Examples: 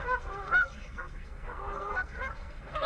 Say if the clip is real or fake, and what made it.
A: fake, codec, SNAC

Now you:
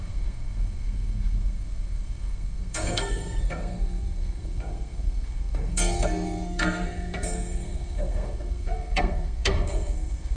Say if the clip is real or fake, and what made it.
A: fake, codec, SNAC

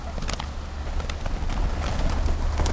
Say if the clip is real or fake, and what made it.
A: real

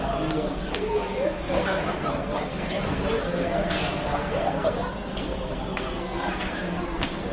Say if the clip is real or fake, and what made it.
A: fake, codec, SNAC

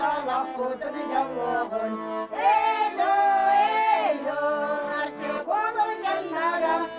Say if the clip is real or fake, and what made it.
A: real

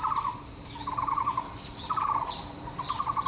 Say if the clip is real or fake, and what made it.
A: real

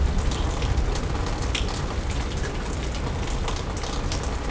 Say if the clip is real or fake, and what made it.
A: real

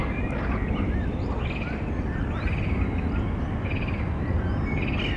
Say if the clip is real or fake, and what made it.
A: real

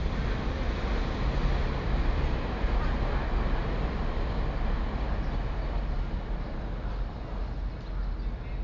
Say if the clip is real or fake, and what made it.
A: real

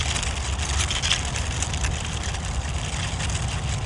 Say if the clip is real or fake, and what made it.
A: real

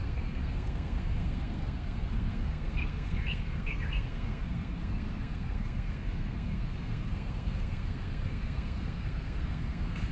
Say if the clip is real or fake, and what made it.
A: fake, codec, SNAC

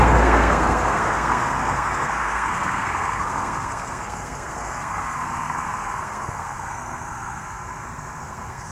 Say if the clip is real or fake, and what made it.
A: fake, codec, SNAC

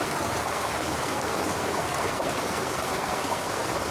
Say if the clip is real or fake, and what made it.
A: fake, codec, SNAC